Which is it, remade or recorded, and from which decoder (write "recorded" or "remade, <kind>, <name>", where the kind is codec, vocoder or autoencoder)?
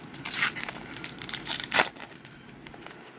remade, vocoder, BigVGAN v2